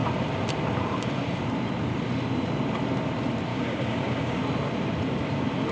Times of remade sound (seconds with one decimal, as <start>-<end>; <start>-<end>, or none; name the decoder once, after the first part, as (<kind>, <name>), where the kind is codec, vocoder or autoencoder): 3.5-4.4 (codec, DAC)